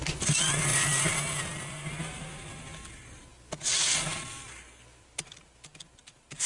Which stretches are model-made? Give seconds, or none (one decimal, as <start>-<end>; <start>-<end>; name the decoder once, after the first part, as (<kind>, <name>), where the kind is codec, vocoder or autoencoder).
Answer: none